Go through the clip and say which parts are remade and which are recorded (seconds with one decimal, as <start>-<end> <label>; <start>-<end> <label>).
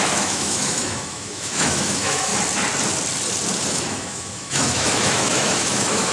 0.0-2.3 remade; 2.3-3.7 recorded; 3.7-6.1 remade